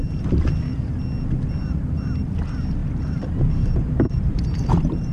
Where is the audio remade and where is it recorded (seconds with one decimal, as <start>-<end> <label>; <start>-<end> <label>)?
0.0-2.8 recorded; 2.8-5.1 remade